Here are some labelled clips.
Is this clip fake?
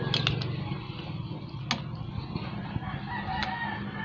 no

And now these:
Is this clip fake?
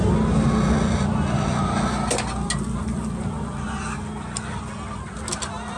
no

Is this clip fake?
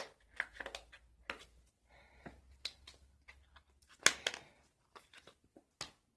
no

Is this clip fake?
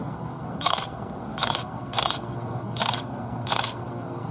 yes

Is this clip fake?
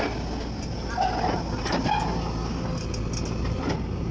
no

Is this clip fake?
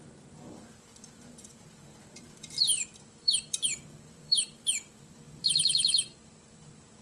yes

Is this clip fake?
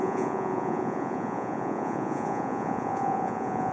yes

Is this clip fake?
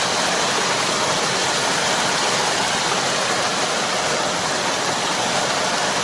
no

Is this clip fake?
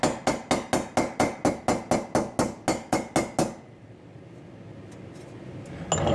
no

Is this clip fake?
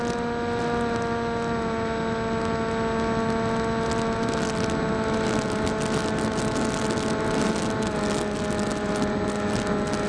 no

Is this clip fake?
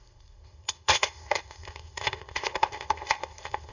yes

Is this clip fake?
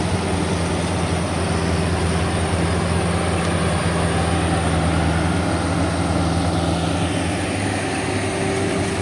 no